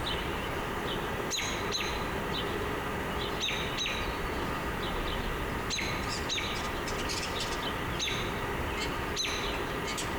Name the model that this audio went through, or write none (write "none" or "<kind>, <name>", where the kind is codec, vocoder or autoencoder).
none